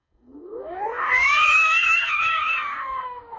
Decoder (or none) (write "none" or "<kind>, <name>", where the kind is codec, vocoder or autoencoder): codec, DAC